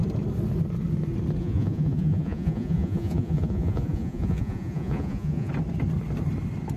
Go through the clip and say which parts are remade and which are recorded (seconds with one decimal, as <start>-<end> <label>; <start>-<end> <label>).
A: 0.0-1.4 recorded; 1.4-5.5 remade; 5.5-6.8 recorded

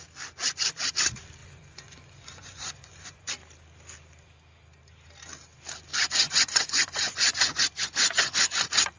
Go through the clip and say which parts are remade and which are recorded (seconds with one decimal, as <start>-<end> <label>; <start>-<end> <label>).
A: 0.0-1.4 recorded; 1.4-3.3 remade; 3.3-5.9 recorded; 5.9-8.5 remade; 8.5-9.0 recorded

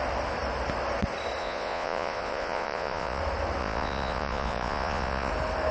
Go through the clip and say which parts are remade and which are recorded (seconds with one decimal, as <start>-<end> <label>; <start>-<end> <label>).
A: 0.0-1.4 recorded; 1.4-3.2 remade; 3.2-3.6 recorded; 3.6-5.3 remade; 5.3-5.7 recorded

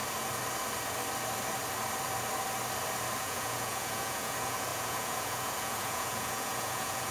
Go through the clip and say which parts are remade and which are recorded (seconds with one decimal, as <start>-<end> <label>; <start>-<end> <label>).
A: 0.0-3.2 recorded; 3.2-7.1 remade

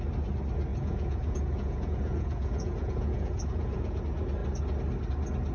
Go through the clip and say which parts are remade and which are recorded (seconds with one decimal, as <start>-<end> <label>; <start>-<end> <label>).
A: 0.0-0.7 recorded; 0.7-4.0 remade; 4.0-5.5 recorded